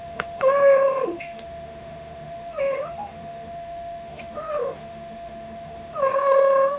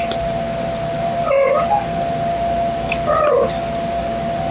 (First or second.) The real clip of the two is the second